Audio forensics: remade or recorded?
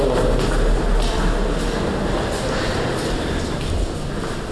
recorded